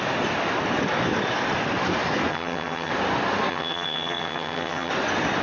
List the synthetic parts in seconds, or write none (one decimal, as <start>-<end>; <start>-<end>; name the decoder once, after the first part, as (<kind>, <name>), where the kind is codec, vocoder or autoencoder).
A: 2.3-2.9 (vocoder, HiFi-GAN); 3.5-4.9